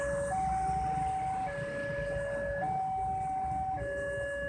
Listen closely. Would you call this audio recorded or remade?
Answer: recorded